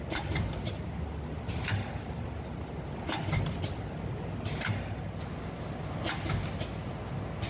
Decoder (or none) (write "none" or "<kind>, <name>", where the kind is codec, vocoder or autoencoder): none